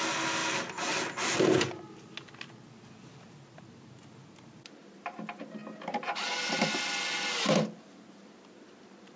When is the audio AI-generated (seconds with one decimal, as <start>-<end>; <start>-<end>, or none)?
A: none